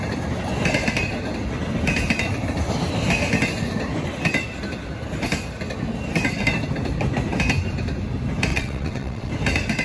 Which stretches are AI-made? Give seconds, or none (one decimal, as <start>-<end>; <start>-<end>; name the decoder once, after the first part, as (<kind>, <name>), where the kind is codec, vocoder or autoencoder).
8.5-9.3 (vocoder, WaveNeXt)